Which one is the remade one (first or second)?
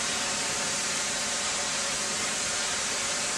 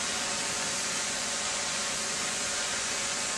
second